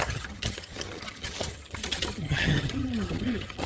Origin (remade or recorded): remade